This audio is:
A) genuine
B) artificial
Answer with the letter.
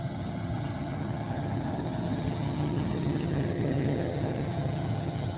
B